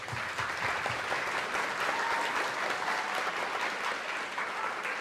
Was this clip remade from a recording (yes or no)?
no